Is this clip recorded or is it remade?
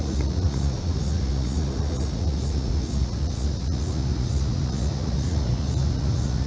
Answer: remade